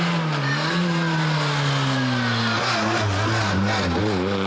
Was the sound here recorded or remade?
recorded